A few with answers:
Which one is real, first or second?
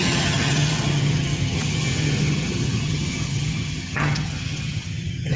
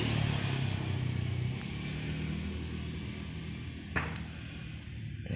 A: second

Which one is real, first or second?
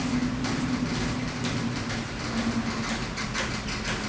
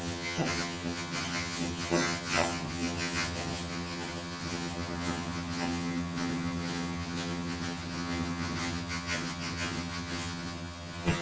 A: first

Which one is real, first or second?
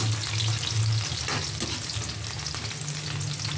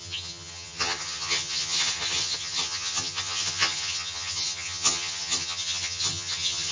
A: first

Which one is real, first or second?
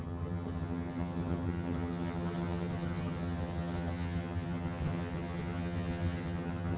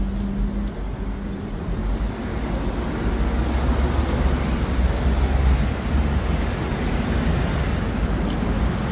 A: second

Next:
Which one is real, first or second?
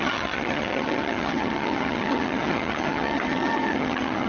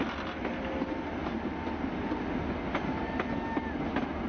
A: second